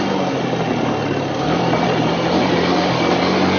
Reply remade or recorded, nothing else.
recorded